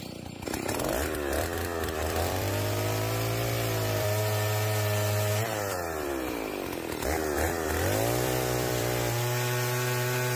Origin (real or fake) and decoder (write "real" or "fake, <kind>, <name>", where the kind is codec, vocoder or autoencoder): fake, vocoder, BigVGAN v2